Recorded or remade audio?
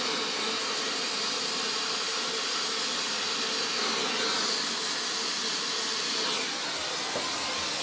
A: recorded